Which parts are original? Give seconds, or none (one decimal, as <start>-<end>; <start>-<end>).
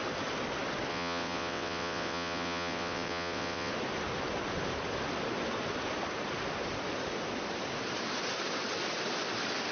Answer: 0.0-0.9; 3.7-9.7